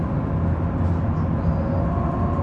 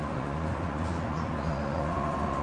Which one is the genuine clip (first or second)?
first